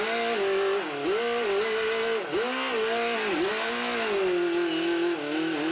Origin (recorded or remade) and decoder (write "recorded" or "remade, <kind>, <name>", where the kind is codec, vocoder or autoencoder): recorded